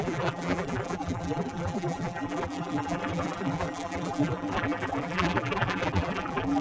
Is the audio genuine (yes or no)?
no